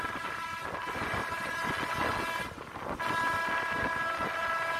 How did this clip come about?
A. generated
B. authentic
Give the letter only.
B